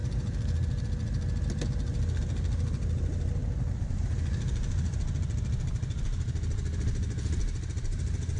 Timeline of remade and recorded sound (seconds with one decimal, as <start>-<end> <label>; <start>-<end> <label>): 0.0-8.4 recorded